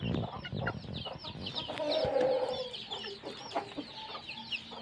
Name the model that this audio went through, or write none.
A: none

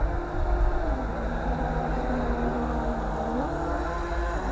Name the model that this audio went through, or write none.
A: none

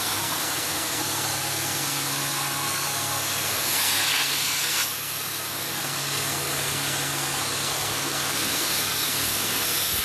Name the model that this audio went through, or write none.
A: codec, SNAC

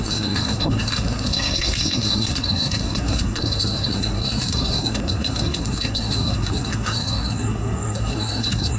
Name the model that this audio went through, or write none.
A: codec, SNAC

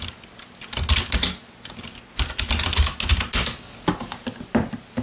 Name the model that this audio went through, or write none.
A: none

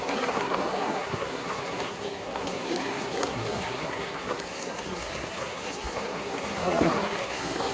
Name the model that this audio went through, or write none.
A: codec, SNAC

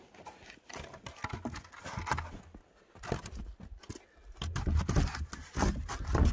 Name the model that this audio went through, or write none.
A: none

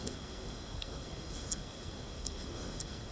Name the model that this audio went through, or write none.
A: codec, SNAC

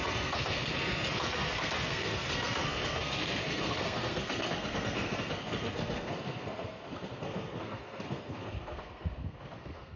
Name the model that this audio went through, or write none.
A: codec, SNAC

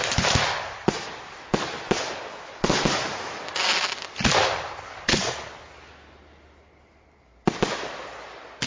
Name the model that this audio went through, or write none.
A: none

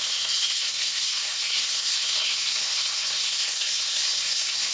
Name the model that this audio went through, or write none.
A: codec, SNAC